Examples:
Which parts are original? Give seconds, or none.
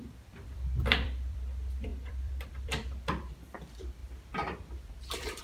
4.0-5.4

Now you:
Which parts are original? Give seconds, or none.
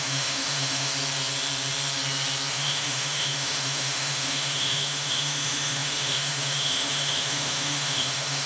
0.9-2.5